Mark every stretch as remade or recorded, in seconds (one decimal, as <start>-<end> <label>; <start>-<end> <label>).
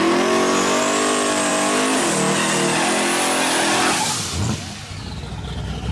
0.0-5.9 recorded